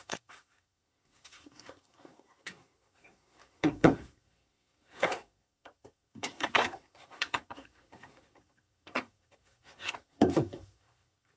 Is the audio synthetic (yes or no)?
yes